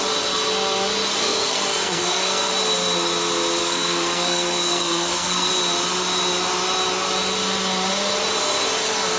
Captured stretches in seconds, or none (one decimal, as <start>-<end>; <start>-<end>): 0.0-1.2; 2.5-3.6; 5.5-9.2